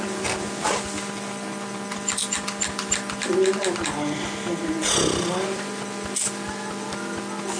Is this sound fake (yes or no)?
no